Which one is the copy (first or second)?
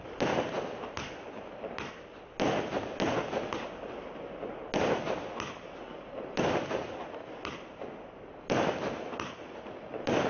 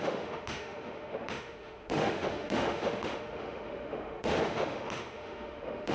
second